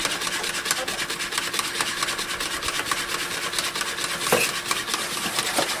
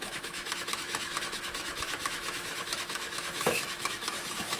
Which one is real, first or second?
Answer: first